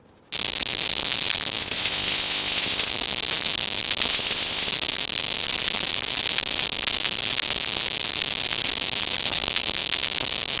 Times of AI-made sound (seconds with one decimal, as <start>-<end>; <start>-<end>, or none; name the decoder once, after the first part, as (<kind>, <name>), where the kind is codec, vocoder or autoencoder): 1.6-2.9 (codec, ZipCodec); 4.1-4.7